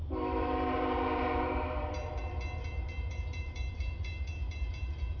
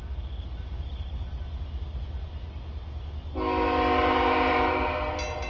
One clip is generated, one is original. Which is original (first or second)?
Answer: second